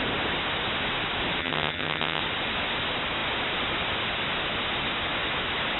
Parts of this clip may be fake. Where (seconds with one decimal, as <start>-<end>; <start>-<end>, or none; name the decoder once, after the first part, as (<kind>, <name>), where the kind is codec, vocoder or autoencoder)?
1.4-2.2 (vocoder, HiFi-GAN)